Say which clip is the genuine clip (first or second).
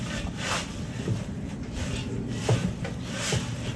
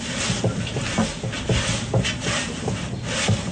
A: second